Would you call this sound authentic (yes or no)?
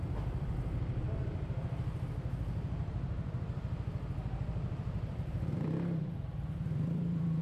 no